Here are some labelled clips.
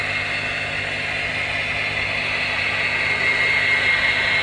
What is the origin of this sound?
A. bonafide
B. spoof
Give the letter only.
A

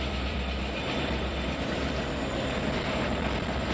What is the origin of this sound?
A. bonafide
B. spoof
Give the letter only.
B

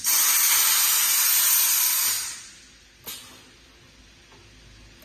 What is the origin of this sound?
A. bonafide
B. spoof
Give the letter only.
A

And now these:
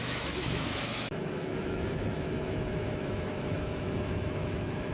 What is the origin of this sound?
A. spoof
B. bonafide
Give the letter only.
A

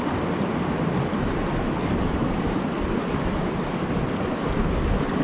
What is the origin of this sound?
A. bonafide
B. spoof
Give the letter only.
A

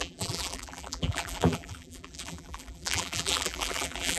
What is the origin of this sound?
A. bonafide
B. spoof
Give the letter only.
B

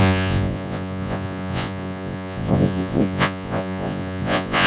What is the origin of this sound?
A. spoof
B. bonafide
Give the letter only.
A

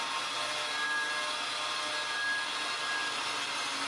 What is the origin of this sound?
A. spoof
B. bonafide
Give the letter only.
B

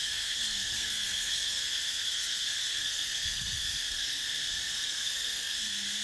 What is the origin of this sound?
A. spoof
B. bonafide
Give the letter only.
A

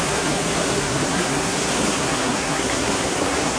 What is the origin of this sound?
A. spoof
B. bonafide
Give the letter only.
A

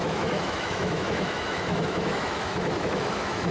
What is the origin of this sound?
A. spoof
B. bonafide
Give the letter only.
A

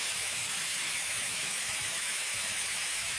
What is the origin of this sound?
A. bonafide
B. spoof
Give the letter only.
B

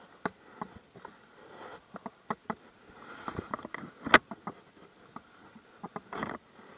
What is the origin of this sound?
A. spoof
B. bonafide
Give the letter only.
B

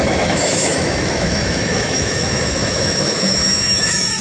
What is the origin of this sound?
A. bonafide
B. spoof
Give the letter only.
B